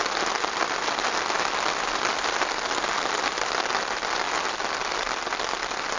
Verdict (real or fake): real